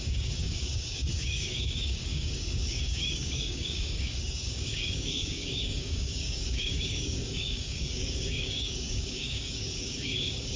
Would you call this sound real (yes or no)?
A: no